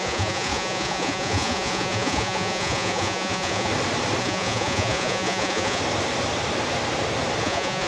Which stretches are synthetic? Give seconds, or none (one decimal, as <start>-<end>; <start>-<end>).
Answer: 0.0-3.7; 4.2-5.8; 7.4-7.9